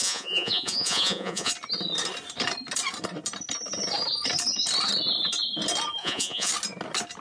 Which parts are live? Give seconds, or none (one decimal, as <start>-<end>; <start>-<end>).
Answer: 1.5-6.0; 6.5-7.2